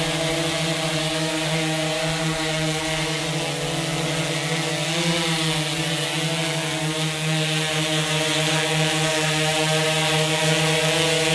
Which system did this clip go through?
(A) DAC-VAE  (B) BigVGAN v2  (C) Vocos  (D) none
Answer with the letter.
D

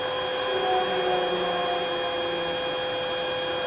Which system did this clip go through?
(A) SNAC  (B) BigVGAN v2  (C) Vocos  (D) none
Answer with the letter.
D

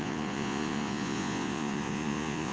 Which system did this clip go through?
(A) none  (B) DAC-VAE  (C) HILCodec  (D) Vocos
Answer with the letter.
D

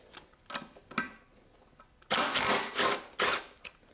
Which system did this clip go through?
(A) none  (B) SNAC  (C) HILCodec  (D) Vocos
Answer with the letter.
A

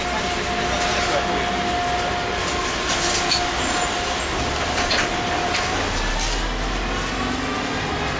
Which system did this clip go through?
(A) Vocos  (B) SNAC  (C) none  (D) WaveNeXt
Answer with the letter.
C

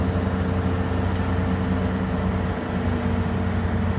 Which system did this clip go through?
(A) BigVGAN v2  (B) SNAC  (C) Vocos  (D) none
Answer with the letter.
D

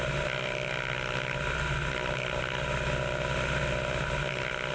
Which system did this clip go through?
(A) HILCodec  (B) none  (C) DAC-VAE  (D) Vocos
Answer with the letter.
B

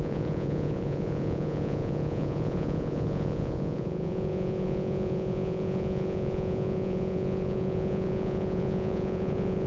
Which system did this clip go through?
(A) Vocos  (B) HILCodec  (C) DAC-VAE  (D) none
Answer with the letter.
A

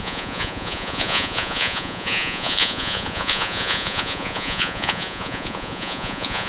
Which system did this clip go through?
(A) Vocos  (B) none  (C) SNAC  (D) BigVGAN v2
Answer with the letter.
A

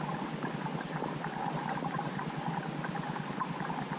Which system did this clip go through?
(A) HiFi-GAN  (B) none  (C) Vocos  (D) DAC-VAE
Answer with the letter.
B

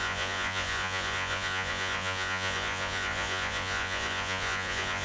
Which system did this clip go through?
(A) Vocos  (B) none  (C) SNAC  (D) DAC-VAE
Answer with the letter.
A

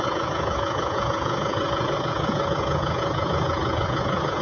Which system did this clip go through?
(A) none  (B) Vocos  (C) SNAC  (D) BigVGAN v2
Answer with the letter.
B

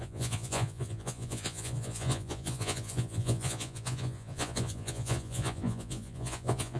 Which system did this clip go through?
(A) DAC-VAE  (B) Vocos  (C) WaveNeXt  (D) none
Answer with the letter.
B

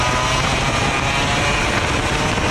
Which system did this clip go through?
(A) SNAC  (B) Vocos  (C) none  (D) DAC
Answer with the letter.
C